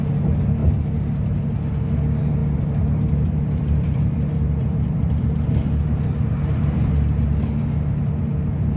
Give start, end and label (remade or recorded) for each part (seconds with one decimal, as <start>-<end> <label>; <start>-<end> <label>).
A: 0.0-2.4 recorded; 2.4-6.9 remade; 6.9-8.8 recorded